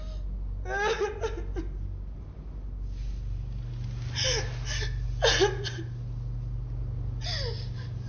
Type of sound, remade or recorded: recorded